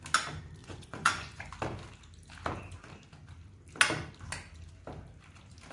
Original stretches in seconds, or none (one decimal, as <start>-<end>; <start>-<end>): 0.0-0.6; 1.5-5.7